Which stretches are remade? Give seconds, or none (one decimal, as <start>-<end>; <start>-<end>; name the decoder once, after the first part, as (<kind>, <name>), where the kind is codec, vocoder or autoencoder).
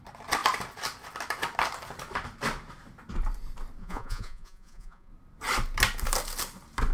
3.8-5.1 (vocoder, Vocos)